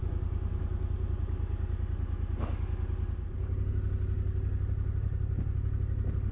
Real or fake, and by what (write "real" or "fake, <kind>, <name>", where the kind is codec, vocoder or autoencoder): real